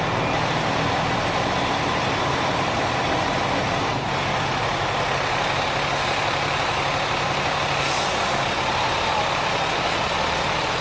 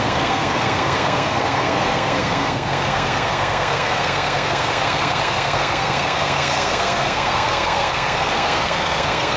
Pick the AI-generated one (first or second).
second